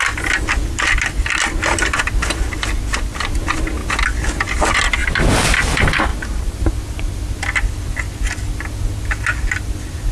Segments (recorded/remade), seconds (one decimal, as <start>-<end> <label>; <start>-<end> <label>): 0.0-5.0 recorded; 5.0-5.5 remade; 5.5-6.1 recorded; 6.1-6.7 remade; 6.7-10.1 recorded